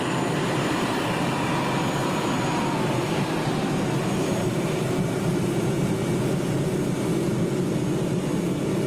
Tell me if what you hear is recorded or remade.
recorded